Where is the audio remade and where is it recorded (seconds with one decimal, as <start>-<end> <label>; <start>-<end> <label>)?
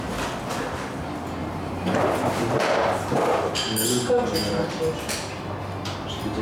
0.0-1.4 recorded; 1.4-3.5 remade; 3.5-6.4 recorded